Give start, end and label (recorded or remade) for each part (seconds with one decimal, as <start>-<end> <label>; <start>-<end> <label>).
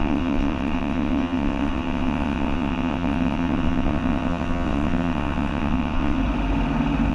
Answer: 0.0-6.2 remade; 6.2-7.1 recorded